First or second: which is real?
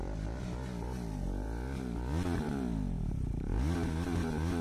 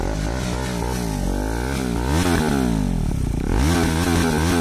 second